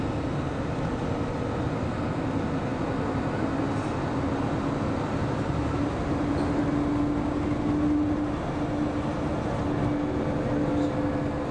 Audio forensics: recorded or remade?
recorded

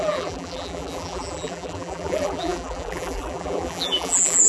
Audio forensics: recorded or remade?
remade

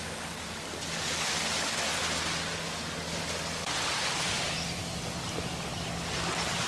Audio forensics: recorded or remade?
recorded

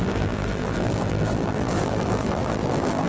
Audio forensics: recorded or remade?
remade